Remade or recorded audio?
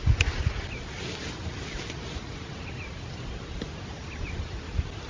recorded